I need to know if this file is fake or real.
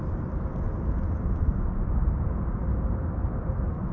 real